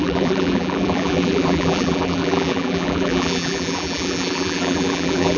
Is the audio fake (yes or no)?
yes